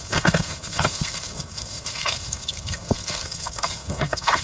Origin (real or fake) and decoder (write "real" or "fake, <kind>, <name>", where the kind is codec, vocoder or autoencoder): fake, codec, SNAC